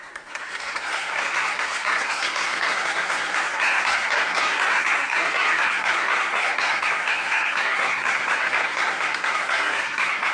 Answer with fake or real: fake